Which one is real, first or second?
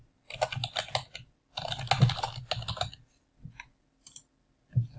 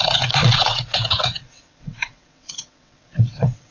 first